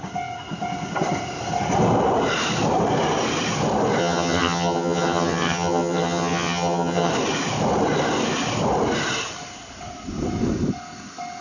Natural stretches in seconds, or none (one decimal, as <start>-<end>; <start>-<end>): 0.0-4.0; 7.1-11.4